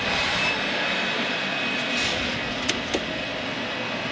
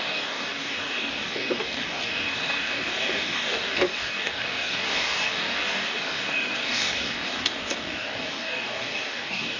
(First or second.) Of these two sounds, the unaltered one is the first